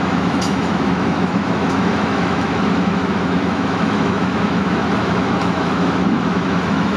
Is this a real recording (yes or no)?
no